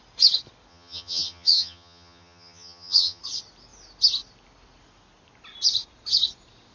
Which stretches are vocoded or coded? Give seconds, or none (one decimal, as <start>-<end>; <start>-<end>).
0.7-3.2